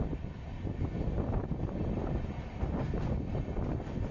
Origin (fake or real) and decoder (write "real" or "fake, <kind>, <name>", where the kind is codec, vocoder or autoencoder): real